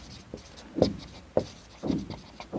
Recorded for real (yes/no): yes